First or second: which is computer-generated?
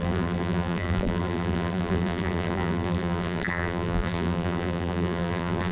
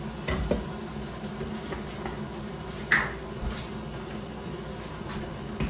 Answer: first